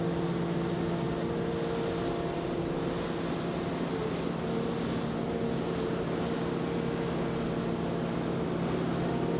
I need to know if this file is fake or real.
real